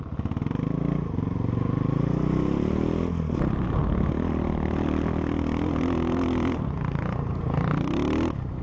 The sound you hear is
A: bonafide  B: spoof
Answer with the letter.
A